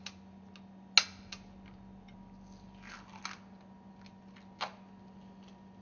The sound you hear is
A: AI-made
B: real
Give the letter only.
B